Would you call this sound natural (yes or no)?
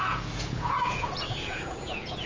no